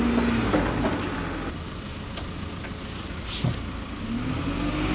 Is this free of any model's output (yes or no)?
yes